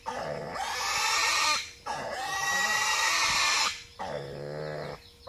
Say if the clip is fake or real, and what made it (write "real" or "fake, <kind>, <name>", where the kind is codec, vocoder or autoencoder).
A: real